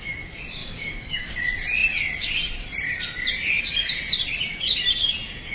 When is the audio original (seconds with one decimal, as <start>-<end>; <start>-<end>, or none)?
0.0-0.6; 1.4-5.5